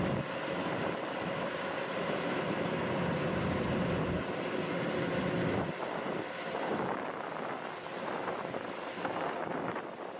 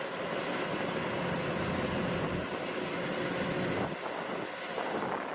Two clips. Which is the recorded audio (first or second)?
second